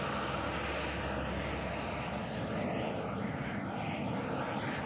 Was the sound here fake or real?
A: real